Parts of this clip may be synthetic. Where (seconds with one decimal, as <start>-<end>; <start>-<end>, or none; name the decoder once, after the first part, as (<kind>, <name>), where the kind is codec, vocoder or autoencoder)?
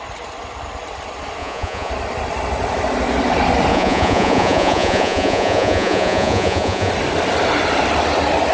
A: 1.4-1.9 (vocoder, Vocos); 3.7-6.9